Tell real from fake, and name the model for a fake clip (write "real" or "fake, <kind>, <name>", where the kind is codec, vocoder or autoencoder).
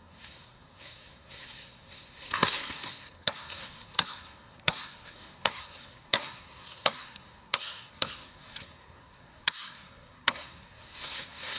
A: fake, codec, SNAC